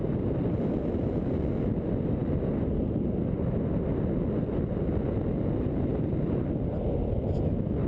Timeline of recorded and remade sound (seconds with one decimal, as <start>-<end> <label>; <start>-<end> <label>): 0.0-7.9 recorded

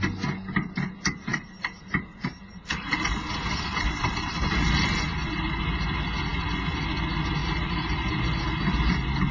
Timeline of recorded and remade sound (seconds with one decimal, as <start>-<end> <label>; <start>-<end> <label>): 0.0-1.3 recorded; 1.3-4.7 remade; 4.7-7.4 recorded; 7.4-8.1 remade; 8.1-9.3 recorded

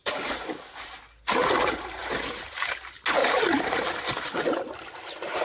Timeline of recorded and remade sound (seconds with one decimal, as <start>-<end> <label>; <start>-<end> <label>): 0.0-0.5 remade; 0.5-2.0 recorded; 2.0-2.5 remade; 2.5-3.2 recorded; 3.2-3.9 remade; 3.9-5.4 recorded

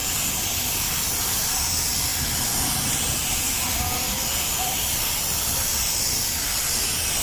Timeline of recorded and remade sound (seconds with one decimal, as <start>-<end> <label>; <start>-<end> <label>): 0.0-1.7 remade; 1.7-7.2 recorded